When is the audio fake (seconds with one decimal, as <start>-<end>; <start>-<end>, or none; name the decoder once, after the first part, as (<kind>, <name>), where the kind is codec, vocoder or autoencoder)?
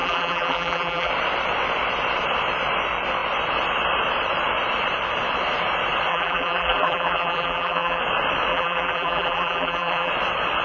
0.0-1.1 (vocoder, BigVGAN v2); 6.1-8.0; 8.5-10.1